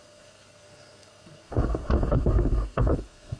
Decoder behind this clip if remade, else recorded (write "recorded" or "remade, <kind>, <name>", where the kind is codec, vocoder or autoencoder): remade, codec, SNAC